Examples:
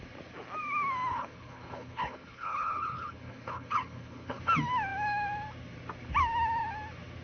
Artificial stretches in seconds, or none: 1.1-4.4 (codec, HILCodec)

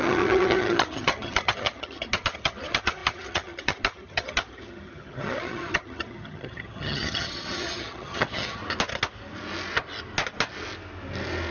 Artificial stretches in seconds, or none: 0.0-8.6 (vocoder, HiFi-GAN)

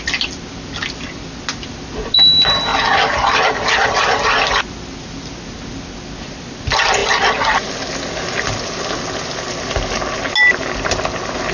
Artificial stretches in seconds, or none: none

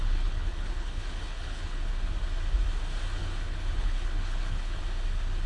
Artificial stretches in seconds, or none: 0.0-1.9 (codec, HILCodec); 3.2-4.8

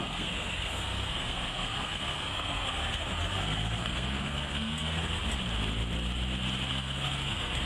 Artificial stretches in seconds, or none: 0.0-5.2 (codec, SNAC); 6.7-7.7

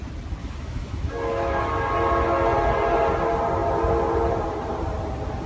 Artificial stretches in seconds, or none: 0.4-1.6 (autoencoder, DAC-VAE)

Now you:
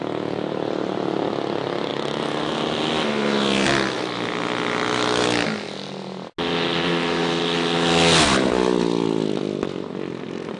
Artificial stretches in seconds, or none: none